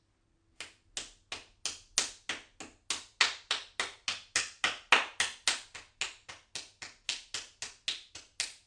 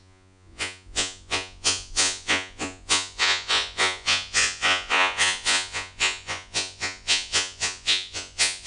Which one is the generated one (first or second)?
second